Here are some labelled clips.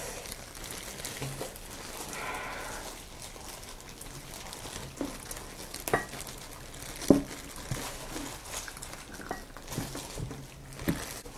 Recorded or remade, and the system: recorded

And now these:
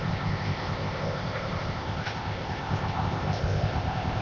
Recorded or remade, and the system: remade, codec, ZipCodec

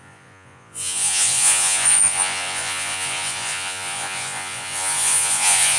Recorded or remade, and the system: remade, vocoder, Vocos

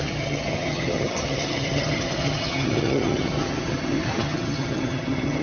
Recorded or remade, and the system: remade, vocoder, HiFi-GAN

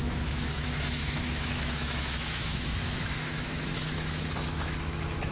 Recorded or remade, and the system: remade, autoencoder, DAC-VAE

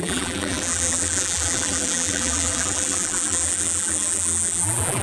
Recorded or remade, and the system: remade, vocoder, BigVGAN v2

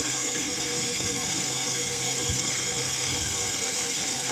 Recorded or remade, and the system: remade, codec, SNAC